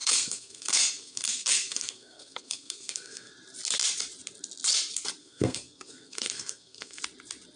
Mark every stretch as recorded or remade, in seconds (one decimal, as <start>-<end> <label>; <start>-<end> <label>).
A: 0.0-3.3 remade; 3.3-5.2 recorded; 5.2-7.0 remade; 7.0-7.6 recorded